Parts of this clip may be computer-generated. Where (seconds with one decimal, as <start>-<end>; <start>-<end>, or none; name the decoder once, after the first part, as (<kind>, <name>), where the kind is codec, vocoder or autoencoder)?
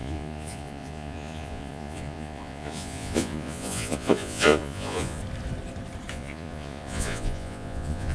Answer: 0.0-5.2 (vocoder, Vocos); 6.1-8.1